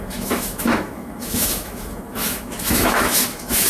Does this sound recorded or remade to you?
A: remade